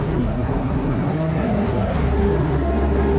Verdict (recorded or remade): remade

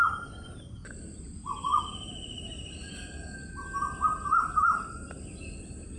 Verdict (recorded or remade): recorded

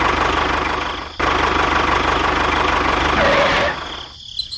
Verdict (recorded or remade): recorded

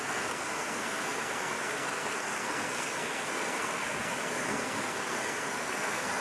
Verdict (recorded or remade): remade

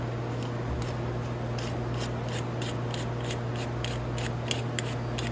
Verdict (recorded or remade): recorded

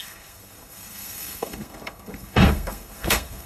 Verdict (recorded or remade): remade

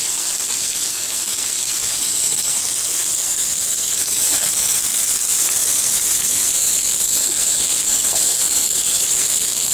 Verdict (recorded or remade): remade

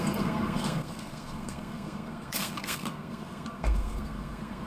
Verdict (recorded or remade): remade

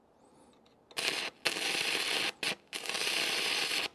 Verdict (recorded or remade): recorded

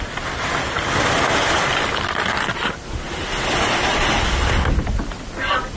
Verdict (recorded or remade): recorded